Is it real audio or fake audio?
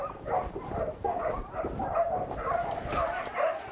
real